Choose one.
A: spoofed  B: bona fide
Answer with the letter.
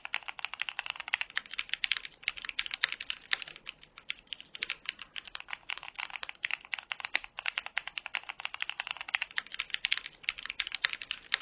B